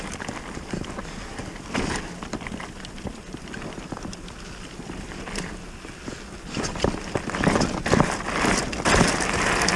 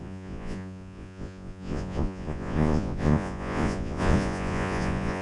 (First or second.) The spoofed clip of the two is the second